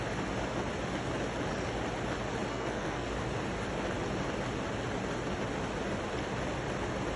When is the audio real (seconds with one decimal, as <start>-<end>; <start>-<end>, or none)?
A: 0.0-2.5; 3.1-7.2